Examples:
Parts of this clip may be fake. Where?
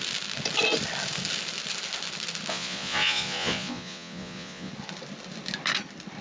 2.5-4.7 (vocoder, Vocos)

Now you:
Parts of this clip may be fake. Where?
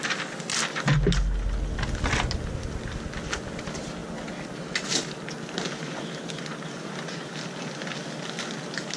none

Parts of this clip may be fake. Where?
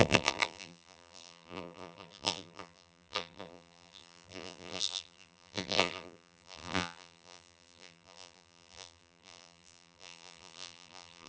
0.0-11.3 (vocoder, BigVGAN v2)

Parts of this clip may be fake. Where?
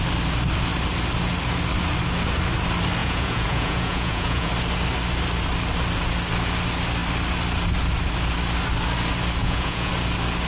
3.0-4.5 (vocoder, Vocos); 9.4-9.9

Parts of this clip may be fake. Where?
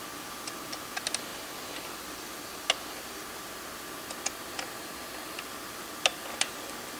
none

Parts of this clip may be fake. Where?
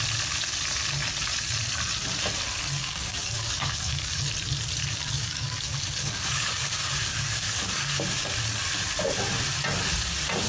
2.8-4.2 (codec, DAC); 4.8-8.3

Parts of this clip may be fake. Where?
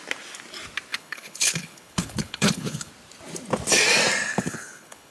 0.9-2.9 (codec, HILCodec); 4.3-5.1